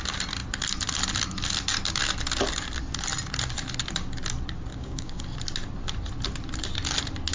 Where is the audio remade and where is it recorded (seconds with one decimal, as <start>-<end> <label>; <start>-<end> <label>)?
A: 0.0-4.7 recorded; 4.7-5.2 remade; 5.2-7.3 recorded